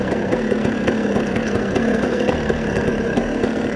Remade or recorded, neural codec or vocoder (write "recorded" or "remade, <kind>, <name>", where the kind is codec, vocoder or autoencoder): remade, codec, SNAC